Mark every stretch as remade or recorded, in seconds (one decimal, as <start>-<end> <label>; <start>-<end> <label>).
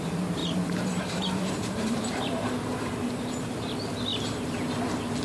0.0-0.4 recorded; 0.4-3.5 remade; 3.5-4.1 recorded; 4.1-5.2 remade